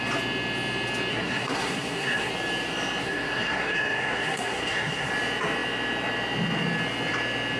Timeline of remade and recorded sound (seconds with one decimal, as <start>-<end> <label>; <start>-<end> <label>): 0.0-1.1 recorded; 1.1-2.3 remade; 2.3-3.0 recorded; 3.0-5.1 remade; 5.1-7.6 recorded